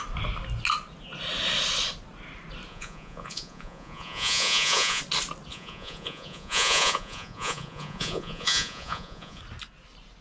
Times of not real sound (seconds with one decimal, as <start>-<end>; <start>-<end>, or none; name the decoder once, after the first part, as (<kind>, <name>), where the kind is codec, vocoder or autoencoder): 2.7-5.0 (vocoder, Vocos); 5.5-9.4